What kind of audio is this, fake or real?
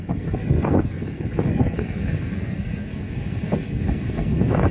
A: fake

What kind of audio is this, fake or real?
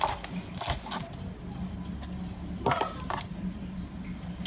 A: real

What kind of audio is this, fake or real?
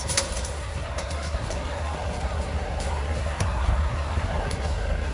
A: fake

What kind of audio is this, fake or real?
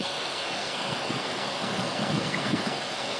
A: fake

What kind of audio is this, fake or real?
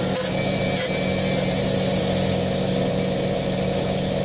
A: real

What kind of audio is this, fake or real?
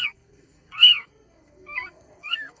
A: fake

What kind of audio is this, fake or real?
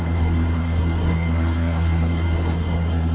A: fake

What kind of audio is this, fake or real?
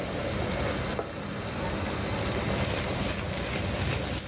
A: real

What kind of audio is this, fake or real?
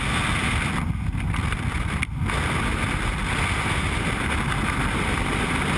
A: real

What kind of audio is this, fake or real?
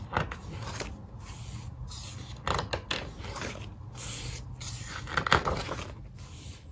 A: real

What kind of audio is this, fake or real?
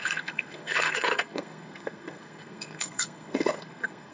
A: fake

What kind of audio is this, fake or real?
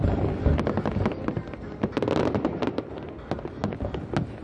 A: real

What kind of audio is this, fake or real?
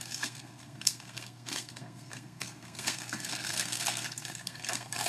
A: fake